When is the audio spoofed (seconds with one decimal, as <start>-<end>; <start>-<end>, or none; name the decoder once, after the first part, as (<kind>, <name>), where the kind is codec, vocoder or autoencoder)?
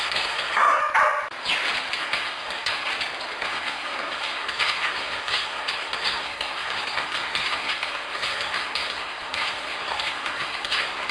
0.0-0.8 (codec, SNAC); 2.0-2.9; 3.4-11.1